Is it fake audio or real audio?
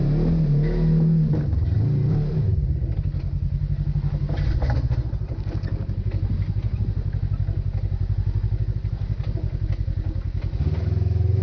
real